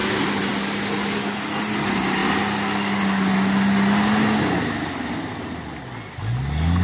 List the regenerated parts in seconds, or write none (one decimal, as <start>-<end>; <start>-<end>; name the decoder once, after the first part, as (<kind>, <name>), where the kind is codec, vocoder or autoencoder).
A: none